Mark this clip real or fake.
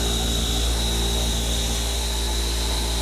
real